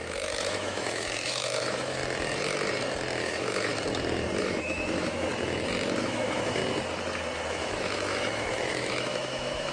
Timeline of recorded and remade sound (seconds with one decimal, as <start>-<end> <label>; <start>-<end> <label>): 0.0-2.0 remade; 2.0-3.2 recorded; 3.2-3.7 remade; 3.7-4.4 recorded; 4.4-5.3 remade; 5.3-6.0 recorded; 6.0-6.6 remade; 6.6-7.5 recorded; 7.5-9.7 remade

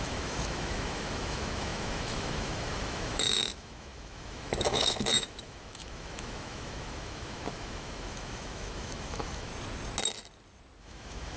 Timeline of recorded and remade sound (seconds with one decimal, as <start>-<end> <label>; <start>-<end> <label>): 0.0-9.5 remade; 9.5-10.8 recorded; 10.8-11.4 remade

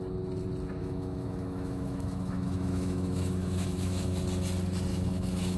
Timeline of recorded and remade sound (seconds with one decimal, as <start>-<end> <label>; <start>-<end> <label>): 0.0-0.8 recorded; 0.8-4.2 remade; 4.2-4.9 recorded; 4.9-5.6 remade